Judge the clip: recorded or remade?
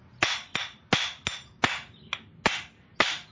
recorded